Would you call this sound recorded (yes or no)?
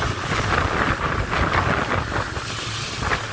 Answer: yes